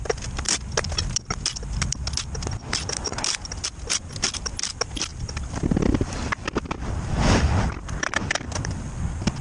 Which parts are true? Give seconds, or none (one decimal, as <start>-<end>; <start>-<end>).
0.0-5.1; 8.9-9.4